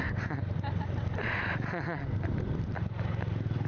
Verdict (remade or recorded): recorded